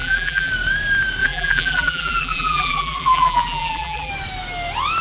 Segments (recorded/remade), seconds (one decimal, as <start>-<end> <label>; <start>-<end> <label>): 0.0-0.5 remade; 0.5-1.2 recorded; 1.2-4.1 remade; 4.1-5.0 recorded